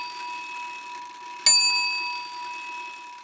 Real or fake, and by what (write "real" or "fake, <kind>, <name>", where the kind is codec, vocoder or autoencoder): real